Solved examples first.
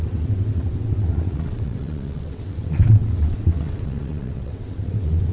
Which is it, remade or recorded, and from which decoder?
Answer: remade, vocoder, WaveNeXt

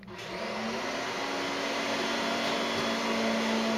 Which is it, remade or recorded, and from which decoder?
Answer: recorded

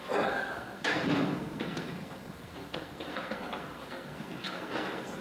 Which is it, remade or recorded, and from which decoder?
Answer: remade, codec, SNAC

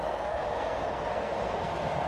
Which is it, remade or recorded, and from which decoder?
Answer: remade, codec, SNAC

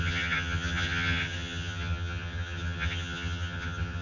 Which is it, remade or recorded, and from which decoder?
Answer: remade, vocoder, HiFi-GAN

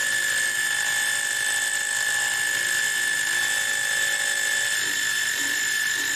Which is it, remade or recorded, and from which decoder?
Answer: recorded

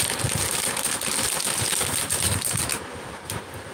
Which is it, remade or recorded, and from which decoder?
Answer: recorded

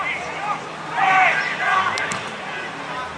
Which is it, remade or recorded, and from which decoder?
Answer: recorded